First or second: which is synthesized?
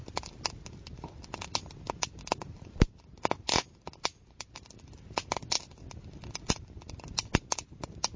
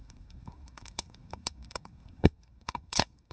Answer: second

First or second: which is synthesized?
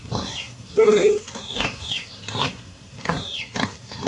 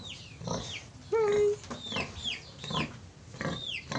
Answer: first